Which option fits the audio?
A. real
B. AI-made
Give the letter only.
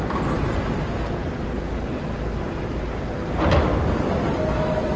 A